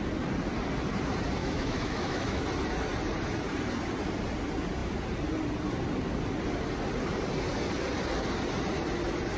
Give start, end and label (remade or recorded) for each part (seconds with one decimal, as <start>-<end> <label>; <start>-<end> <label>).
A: 0.0-1.4 recorded; 1.4-2.4 remade; 2.4-9.4 recorded